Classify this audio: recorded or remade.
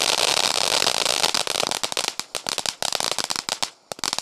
recorded